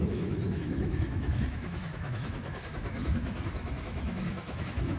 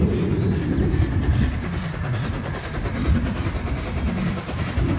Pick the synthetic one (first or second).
first